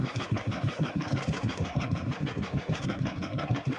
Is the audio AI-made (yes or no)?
yes